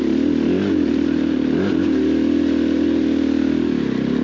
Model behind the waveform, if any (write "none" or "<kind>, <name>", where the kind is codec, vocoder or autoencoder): none